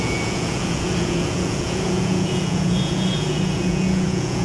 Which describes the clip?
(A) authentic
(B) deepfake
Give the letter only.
B